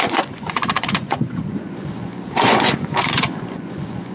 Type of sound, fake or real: fake